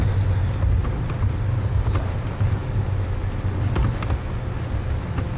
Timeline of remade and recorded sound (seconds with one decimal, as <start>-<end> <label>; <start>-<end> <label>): 0.0-5.4 recorded